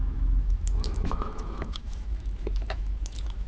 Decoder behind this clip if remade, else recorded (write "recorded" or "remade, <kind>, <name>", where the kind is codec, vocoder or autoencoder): remade, autoencoder, DAC-VAE